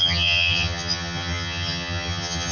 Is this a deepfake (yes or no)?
yes